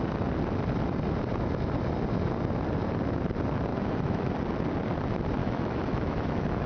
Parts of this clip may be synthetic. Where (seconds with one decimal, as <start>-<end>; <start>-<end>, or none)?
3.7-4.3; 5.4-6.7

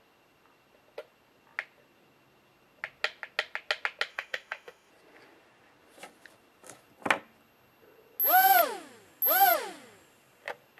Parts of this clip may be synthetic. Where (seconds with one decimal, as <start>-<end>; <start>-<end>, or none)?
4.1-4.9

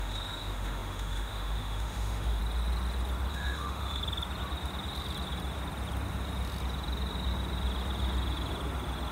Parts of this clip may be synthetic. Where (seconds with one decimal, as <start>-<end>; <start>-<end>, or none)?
0.0-2.4; 3.3-4.0

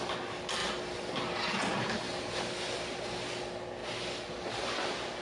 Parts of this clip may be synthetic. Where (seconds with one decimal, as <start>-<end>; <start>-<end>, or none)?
none

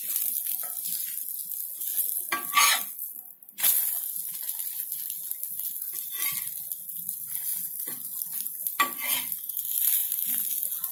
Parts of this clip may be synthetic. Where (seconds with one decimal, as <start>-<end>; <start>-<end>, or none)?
none

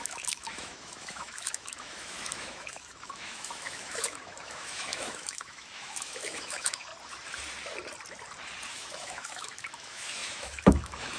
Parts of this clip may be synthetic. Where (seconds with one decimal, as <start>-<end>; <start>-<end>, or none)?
0.0-6.9; 8.7-11.2

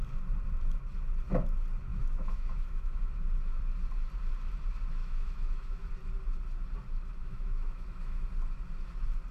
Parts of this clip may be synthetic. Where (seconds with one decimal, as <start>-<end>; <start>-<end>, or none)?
1.9-3.0; 5.0-5.9; 7.2-8.3